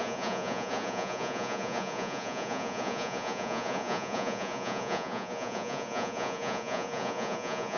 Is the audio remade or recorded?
remade